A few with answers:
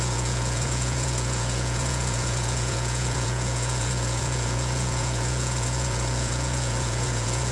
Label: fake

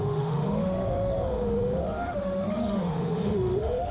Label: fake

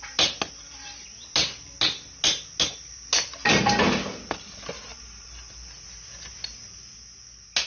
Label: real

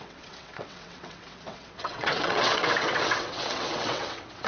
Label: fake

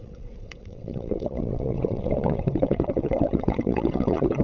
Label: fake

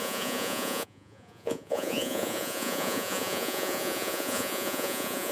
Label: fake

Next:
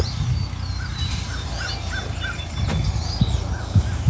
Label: real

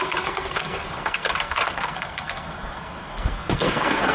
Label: fake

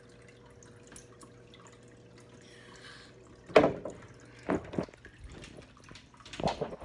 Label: real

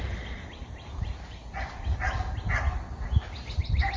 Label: real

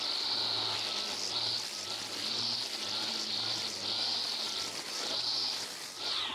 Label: real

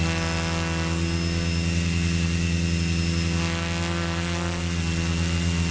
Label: real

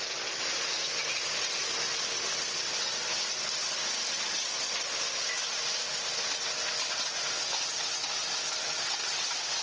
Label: real